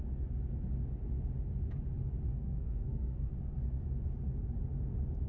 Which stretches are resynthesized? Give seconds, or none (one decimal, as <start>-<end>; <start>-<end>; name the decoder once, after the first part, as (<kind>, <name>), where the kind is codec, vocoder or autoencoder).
2.3-3.3 (codec, SNAC)

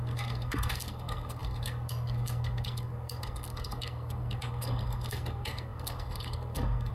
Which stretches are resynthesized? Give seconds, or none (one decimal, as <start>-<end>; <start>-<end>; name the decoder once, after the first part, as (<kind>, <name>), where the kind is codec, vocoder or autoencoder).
0.0-6.9 (codec, SNAC)

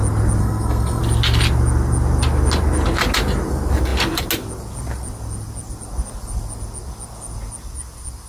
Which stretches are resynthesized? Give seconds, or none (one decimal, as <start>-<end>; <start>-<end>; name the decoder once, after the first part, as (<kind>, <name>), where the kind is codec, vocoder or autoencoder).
0.4-1.0 (codec, SNAC)